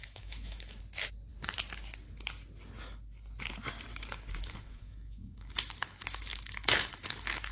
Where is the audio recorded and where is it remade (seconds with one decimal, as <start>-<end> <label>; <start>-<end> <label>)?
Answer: 0.0-0.8 remade; 0.8-3.9 recorded; 3.9-7.5 remade

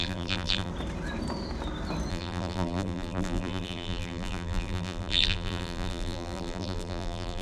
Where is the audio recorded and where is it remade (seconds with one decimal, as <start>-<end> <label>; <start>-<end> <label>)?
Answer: 0.0-0.7 remade; 0.7-2.1 recorded; 2.1-7.4 remade

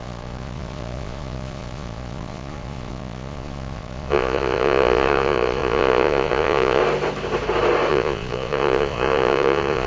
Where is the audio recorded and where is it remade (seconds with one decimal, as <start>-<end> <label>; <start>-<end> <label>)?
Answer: 0.0-6.8 remade; 6.8-7.9 recorded; 7.9-9.9 remade

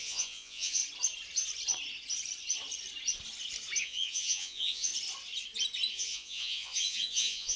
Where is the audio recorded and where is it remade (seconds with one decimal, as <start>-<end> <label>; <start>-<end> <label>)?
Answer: 0.0-0.8 remade; 0.8-3.8 recorded; 3.8-4.9 remade; 4.9-5.9 recorded; 5.9-7.6 remade

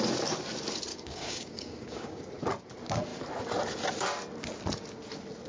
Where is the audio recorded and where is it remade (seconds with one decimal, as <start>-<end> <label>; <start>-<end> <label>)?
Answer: 0.0-0.9 recorded; 0.9-2.2 remade; 2.2-5.5 recorded

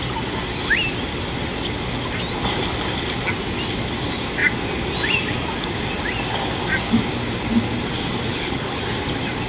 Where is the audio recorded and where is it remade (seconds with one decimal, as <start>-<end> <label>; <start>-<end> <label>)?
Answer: 0.0-8.3 recorded; 8.3-8.8 remade; 8.8-9.5 recorded

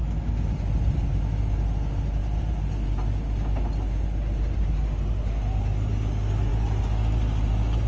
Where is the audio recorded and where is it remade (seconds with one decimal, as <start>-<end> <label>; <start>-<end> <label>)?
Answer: 0.0-7.9 recorded

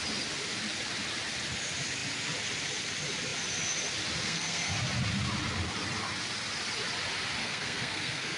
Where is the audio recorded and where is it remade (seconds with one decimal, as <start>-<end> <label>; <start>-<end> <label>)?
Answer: 0.0-4.2 recorded; 4.2-4.7 remade; 4.7-7.4 recorded; 7.4-8.4 remade